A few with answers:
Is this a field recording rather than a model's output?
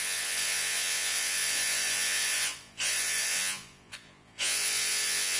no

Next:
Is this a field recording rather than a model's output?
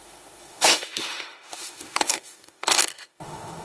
no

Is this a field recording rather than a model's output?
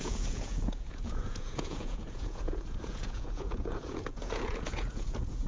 no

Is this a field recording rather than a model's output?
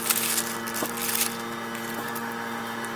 yes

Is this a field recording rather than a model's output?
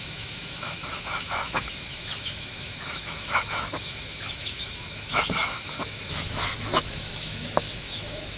no